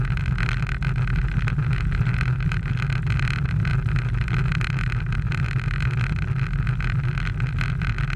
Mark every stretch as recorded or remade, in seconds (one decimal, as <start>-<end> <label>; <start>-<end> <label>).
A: 0.0-1.2 recorded; 1.2-2.7 remade; 2.7-8.2 recorded